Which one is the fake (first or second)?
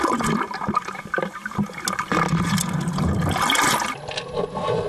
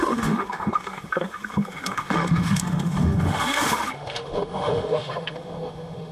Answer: second